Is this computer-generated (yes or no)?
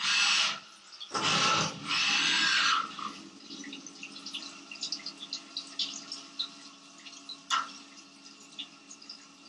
no